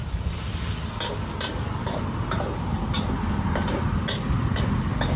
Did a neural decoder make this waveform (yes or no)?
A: no